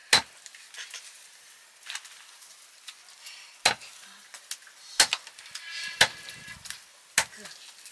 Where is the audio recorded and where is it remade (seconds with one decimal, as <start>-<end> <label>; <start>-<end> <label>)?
0.0-7.9 recorded